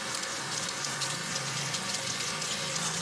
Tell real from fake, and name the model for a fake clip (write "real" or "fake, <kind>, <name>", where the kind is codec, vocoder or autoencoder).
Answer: fake, vocoder, Vocos